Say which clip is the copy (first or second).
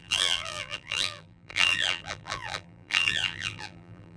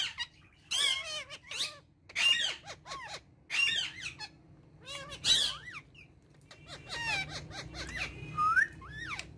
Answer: first